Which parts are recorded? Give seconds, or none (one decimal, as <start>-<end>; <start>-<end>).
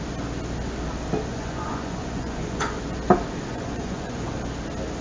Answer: 0.0-1.3; 2.8-3.5; 4.3-5.0